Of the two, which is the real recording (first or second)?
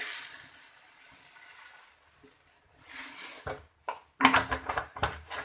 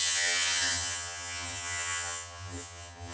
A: first